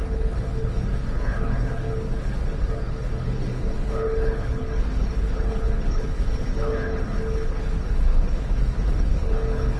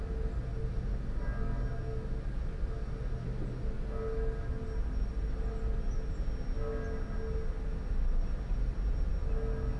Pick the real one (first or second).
second